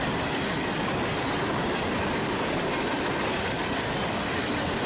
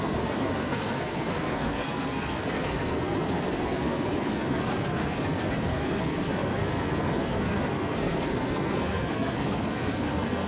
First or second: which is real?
first